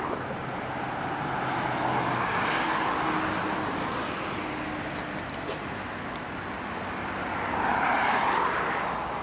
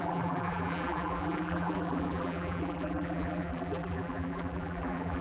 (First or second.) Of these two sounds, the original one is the first